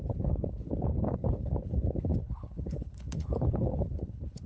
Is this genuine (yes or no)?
no